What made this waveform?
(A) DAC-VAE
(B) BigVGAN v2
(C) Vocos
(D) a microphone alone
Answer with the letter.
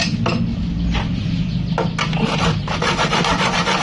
D